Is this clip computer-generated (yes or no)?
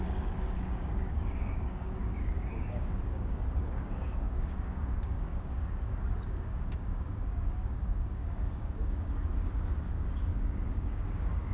yes